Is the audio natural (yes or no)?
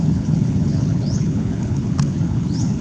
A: no